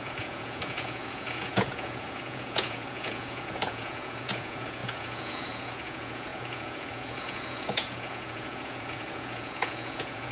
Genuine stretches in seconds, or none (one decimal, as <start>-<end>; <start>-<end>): none